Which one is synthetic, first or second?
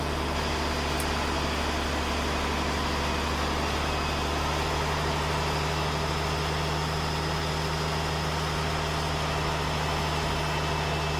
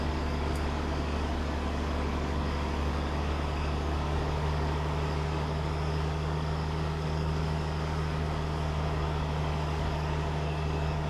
second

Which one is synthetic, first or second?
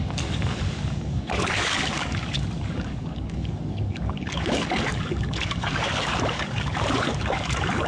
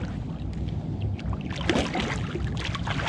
first